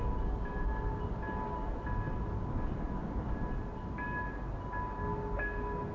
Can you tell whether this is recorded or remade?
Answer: recorded